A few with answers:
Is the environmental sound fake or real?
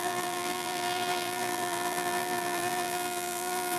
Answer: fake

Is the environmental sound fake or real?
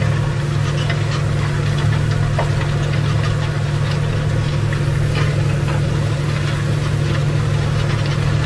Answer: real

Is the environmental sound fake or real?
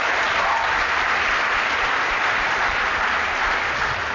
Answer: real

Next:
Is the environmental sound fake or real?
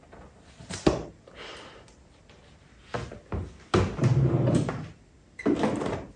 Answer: real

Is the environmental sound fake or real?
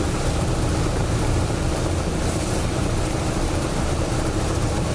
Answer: fake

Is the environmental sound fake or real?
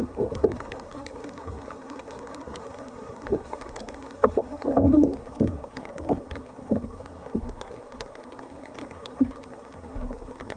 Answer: fake